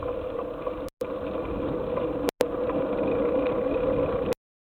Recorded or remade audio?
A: recorded